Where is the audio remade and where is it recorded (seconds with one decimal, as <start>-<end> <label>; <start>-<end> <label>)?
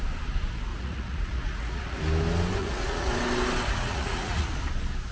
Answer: 0.0-0.7 recorded; 0.7-2.0 remade; 2.0-2.6 recorded; 2.6-3.1 remade; 3.1-3.7 recorded; 3.7-4.5 remade; 4.5-5.1 recorded